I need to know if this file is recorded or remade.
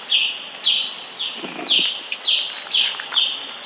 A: recorded